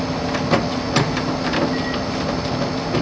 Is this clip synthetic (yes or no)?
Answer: no